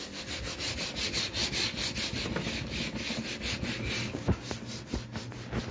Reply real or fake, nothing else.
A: real